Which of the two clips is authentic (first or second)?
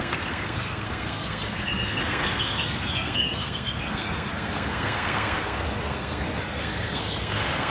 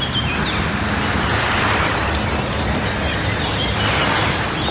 second